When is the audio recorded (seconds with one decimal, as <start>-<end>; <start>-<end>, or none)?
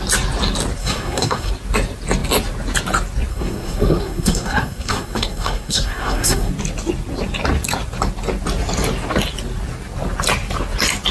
0.0-0.8; 1.5-3.3; 6.5-11.1